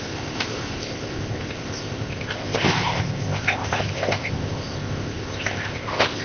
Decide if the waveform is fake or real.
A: fake